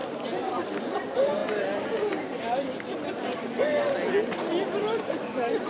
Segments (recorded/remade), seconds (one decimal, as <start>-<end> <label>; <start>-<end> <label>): 0.0-5.7 recorded